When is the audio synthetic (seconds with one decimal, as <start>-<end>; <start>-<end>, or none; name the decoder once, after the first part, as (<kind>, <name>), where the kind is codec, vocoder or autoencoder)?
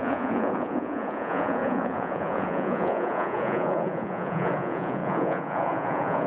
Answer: 0.0-6.3 (vocoder, Vocos)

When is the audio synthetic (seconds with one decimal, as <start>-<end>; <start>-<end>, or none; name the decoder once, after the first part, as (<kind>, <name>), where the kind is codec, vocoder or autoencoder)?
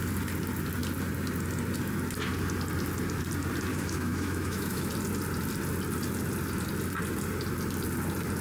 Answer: 3.7-4.9 (autoencoder, DAC-VAE)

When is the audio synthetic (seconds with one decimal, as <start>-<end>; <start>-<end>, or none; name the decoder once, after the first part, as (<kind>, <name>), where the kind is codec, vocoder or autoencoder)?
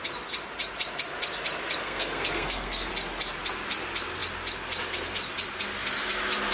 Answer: 1.8-2.9 (codec, SNAC)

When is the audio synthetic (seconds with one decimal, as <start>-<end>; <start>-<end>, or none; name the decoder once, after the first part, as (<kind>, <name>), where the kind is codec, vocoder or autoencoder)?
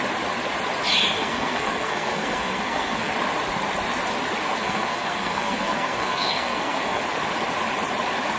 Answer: 1.2-3.1 (codec, SNAC); 4.6-7.0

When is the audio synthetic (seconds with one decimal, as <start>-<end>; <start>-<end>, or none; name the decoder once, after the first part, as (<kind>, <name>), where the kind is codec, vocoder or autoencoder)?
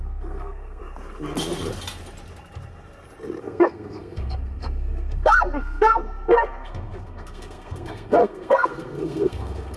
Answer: 0.0-0.8 (codec, SNAC); 3.4-9.8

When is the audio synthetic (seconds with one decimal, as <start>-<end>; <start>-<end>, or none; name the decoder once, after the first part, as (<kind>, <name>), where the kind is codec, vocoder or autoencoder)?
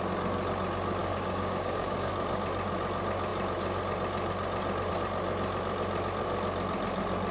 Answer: 1.0-2.1 (codec, DAC)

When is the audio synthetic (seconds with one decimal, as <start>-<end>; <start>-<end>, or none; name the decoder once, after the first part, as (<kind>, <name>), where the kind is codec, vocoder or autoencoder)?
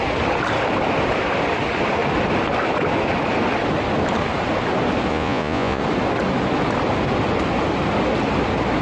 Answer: 5.1-5.8 (vocoder, Vocos)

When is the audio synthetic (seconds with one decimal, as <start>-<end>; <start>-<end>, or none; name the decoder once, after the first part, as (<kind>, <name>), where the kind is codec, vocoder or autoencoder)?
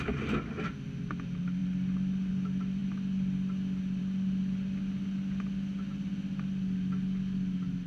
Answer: none